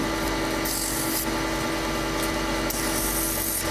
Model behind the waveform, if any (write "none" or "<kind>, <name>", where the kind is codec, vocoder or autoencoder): none